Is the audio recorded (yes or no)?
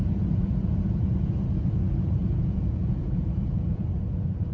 no